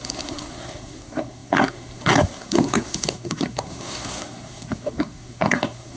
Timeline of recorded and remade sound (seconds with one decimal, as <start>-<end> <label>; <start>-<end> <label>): 0.0-6.0 remade